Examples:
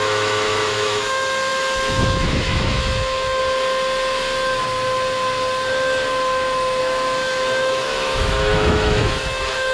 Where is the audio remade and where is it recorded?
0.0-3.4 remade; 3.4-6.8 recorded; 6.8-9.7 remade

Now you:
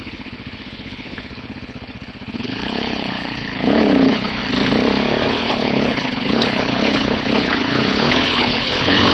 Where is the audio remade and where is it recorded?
0.0-4.4 remade; 4.4-5.3 recorded; 5.3-9.1 remade

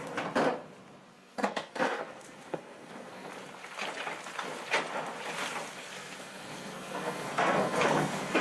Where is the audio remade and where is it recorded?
0.0-1.1 recorded; 1.1-3.3 remade; 3.3-5.8 recorded; 5.8-8.4 remade